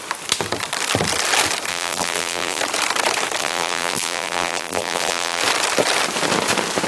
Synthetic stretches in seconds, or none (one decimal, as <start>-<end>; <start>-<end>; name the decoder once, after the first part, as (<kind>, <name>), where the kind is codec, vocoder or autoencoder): 1.7-2.6 (vocoder, BigVGAN v2); 3.4-5.4